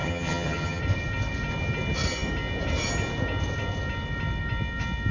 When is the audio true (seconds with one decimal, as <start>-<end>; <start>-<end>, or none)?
0.8-5.1